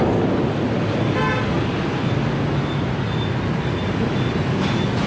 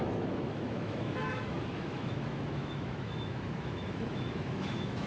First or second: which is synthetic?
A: second